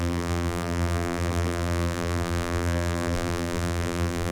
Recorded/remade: remade